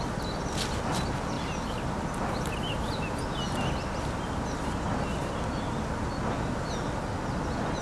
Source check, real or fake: real